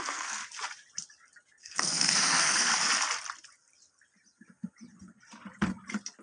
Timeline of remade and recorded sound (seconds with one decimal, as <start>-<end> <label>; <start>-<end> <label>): 0.0-0.4 remade; 0.4-1.6 recorded; 1.6-2.7 remade; 2.7-6.2 recorded